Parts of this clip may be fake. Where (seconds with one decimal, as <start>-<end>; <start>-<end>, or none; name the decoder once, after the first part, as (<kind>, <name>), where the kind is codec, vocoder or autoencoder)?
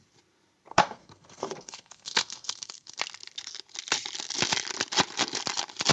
0.7-3.0 (codec, SNAC)